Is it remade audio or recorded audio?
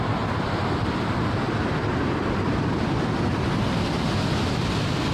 recorded